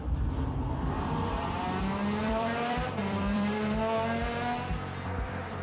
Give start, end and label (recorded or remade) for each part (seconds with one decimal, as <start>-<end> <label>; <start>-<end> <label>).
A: 0.0-2.2 recorded; 2.2-3.8 remade; 3.8-5.6 recorded